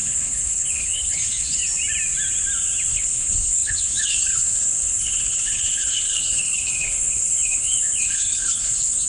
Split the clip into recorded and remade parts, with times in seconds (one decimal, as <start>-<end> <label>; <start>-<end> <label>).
0.0-1.6 remade; 1.6-2.9 recorded; 2.9-9.1 remade